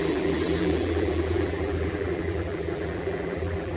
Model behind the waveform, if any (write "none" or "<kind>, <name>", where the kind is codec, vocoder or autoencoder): vocoder, BigVGAN v2